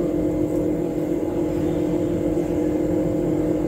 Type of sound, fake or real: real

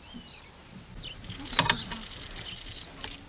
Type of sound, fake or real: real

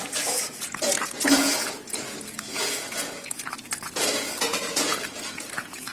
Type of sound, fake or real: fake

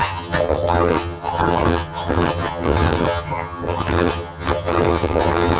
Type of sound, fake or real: fake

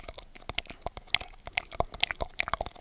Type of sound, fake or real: real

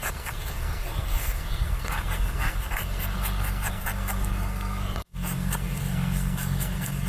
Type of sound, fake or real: fake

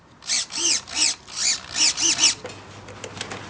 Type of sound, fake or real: real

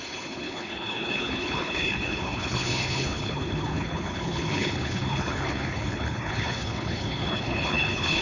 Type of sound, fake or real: fake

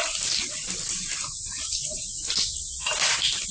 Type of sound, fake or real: real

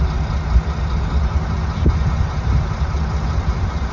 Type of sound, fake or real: real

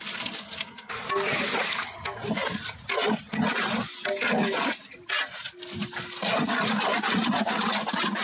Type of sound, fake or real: real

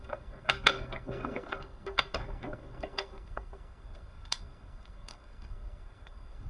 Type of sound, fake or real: fake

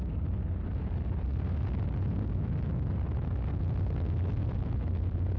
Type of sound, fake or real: real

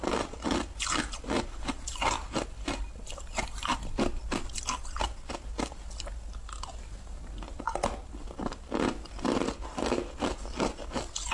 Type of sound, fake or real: real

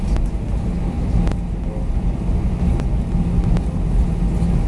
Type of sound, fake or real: real